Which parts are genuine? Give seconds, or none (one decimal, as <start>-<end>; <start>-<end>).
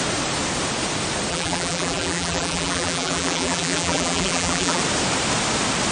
0.0-1.3; 4.8-5.9